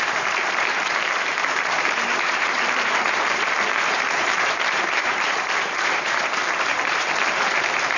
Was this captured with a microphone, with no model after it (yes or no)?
no